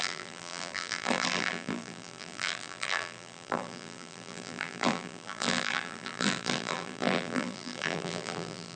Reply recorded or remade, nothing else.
remade